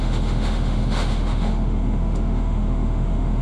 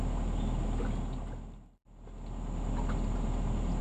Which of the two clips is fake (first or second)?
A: first